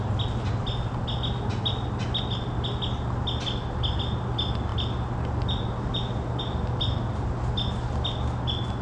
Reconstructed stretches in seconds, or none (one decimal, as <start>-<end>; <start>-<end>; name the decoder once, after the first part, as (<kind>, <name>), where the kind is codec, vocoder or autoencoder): none